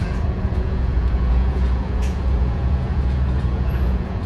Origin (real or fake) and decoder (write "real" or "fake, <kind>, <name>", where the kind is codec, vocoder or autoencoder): fake, vocoder, Vocos